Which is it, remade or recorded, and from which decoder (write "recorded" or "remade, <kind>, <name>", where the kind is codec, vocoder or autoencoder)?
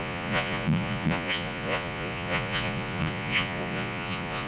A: remade, vocoder, Vocos